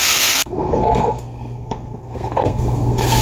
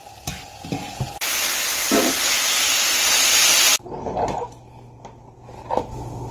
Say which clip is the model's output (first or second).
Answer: first